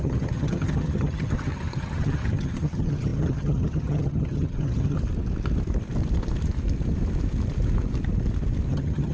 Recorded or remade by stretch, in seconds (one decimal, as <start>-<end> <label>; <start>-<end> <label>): 0.0-5.0 remade; 5.0-8.7 recorded; 8.7-9.1 remade

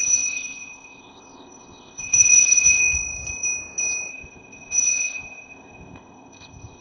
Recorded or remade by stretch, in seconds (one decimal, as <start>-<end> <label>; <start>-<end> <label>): 0.0-2.8 remade; 2.8-4.1 recorded; 4.1-6.8 remade

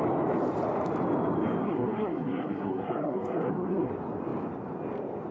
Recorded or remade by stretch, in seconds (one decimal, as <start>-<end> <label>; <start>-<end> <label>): 0.0-1.6 recorded; 1.6-3.9 remade; 3.9-5.3 recorded

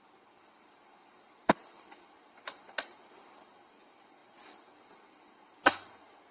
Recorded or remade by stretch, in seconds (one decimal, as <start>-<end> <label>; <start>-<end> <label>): 0.0-6.3 recorded

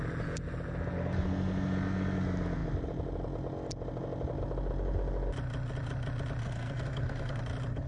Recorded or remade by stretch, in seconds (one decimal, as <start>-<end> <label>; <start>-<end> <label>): 0.0-6.4 recorded; 6.4-7.4 remade; 7.4-7.9 recorded